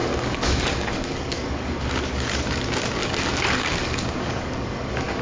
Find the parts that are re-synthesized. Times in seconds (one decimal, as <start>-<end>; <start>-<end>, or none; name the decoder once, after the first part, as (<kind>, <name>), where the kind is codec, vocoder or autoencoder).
0.0-1.7 (codec, DAC); 3.0-5.2